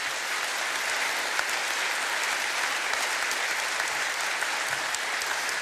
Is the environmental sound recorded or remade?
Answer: recorded